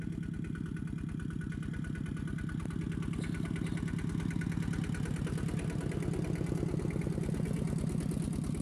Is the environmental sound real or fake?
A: real